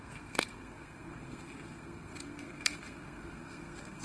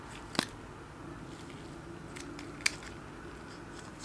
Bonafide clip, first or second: second